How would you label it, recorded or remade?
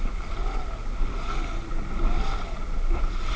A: recorded